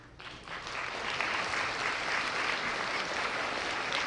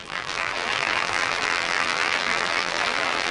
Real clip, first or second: first